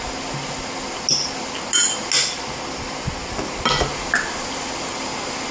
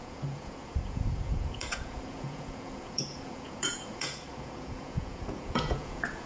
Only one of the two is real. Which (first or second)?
first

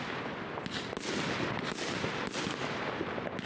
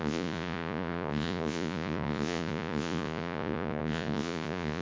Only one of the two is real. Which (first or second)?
first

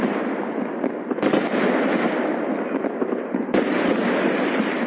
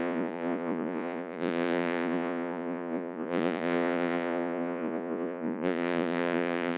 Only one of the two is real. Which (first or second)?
first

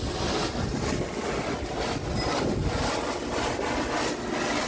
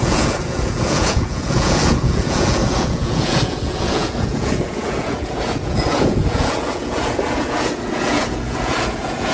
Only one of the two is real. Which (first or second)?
first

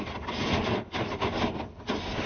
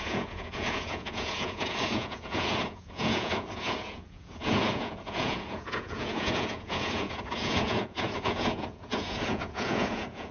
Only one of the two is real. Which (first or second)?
first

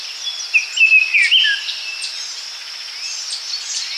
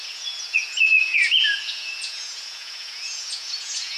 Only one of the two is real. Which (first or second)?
first